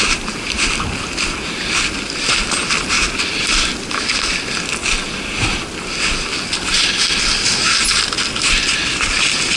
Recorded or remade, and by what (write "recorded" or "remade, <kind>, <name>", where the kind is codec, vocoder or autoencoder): recorded